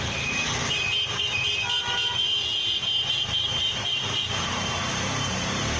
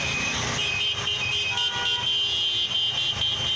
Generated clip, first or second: first